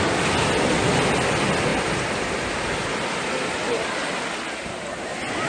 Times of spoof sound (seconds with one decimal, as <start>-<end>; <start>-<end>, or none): none